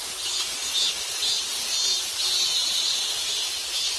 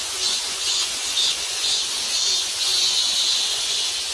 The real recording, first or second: first